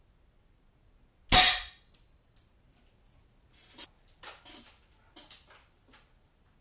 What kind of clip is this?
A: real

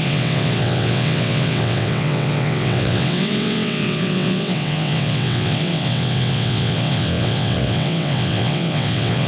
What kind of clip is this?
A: fake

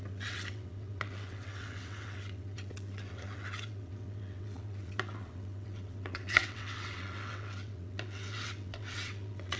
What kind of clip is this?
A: fake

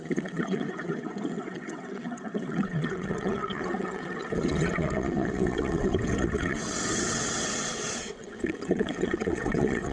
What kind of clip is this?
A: fake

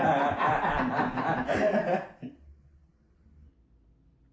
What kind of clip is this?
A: real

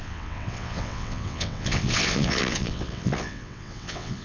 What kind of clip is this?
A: fake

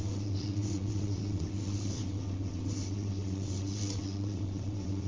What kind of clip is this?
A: fake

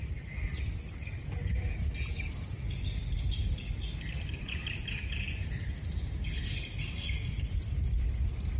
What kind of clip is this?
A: real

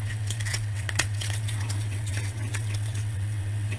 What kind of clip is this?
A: fake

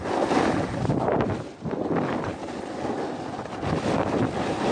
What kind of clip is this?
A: real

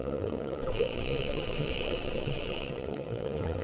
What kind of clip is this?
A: fake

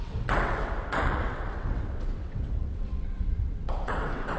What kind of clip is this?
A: fake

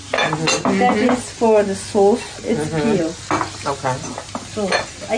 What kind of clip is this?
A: real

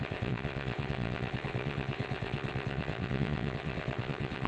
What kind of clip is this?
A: fake